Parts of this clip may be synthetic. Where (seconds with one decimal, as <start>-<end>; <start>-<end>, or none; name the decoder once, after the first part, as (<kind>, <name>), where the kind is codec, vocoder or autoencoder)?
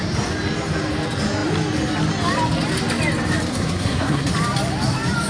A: 3.5-4.3 (codec, SNAC)